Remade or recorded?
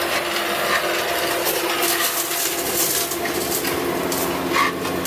recorded